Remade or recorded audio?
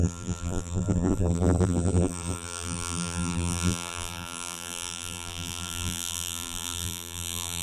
remade